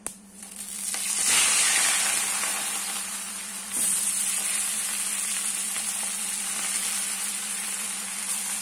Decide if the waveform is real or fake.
real